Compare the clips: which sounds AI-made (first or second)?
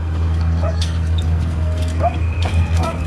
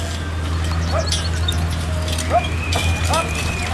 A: first